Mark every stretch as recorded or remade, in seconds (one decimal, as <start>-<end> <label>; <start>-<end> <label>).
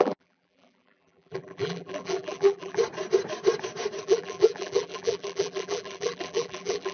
0.0-2.8 remade; 2.8-4.0 recorded; 4.0-6.9 remade